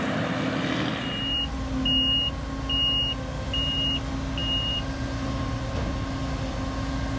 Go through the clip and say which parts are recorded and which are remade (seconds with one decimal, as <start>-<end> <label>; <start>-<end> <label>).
0.0-7.2 recorded